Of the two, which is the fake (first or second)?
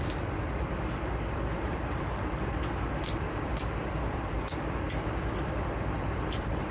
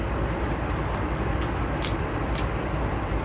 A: first